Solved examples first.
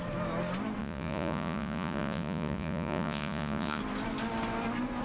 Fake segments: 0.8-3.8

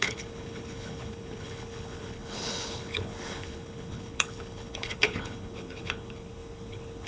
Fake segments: 0.0-7.1